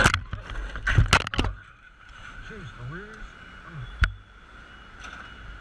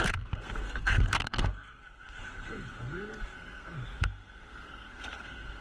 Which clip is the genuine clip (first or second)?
first